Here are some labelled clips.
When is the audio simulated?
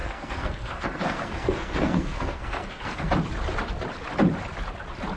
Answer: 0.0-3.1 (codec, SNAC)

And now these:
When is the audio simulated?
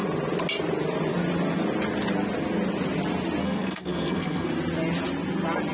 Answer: 3.4-4.5 (codec, SNAC)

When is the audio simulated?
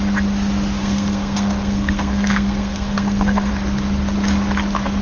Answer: 0.8-3.5 (codec, SNAC)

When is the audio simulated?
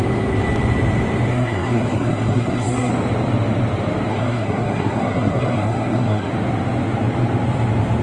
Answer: 1.3-2.9 (codec, SNAC); 4.1-6.3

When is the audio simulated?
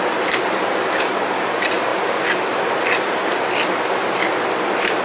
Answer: none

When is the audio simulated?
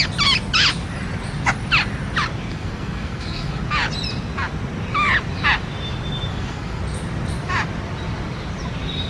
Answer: 2.5-3.6 (codec, SNAC); 6.3-6.8